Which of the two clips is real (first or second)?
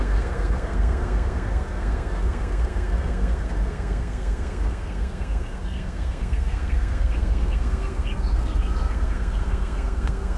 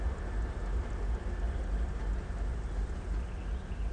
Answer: second